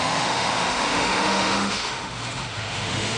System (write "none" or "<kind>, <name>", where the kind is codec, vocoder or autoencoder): autoencoder, DAC-VAE